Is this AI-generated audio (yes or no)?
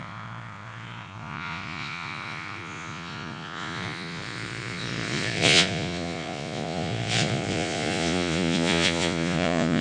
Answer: yes